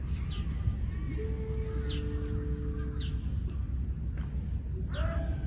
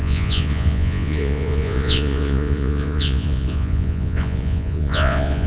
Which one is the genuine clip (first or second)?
first